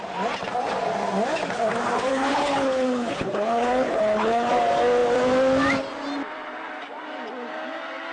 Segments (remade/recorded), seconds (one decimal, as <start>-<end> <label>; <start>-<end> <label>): 0.0-2.1 recorded; 2.1-4.5 remade; 4.5-8.1 recorded